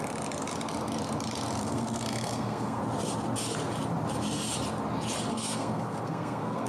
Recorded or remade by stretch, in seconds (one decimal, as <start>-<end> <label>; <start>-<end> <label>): 0.0-1.6 recorded; 1.6-2.8 remade; 2.8-5.3 recorded; 5.3-6.7 remade

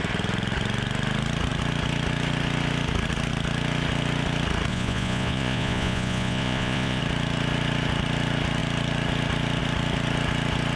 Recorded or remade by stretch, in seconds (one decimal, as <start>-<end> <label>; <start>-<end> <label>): 0.0-4.7 recorded; 4.7-7.0 remade; 7.0-10.8 recorded

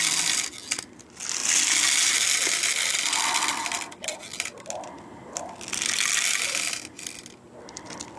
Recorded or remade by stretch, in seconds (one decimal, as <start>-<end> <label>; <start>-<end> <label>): 0.0-8.2 recorded

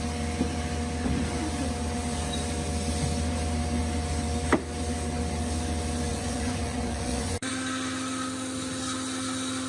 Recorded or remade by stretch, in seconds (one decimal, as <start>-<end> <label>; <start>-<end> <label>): 0.0-6.1 recorded; 6.1-7.5 remade; 7.5-9.7 recorded

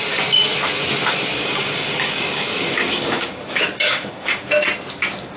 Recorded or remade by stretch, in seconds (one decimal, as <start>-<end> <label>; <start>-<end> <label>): 0.0-1.3 recorded; 1.3-4.5 remade; 4.5-5.4 recorded

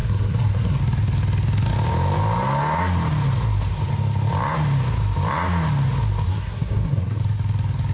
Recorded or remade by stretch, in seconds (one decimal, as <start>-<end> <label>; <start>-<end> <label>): 0.0-0.8 remade; 0.8-6.3 recorded; 6.3-7.2 remade; 7.2-7.9 recorded